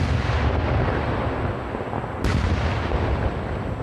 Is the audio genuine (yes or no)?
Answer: yes